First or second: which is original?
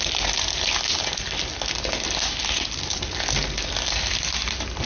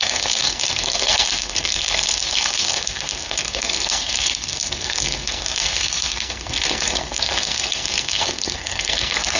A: first